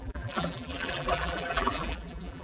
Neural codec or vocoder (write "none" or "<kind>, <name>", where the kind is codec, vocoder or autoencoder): vocoder, BigVGAN v2